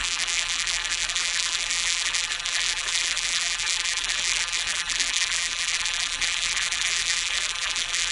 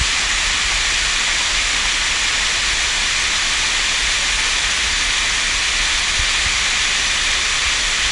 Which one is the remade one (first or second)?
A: first